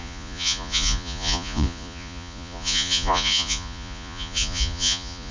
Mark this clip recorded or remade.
remade